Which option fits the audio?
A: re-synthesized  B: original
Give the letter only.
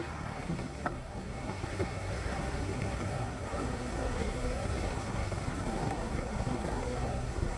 A